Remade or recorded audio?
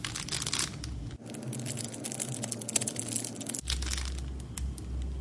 recorded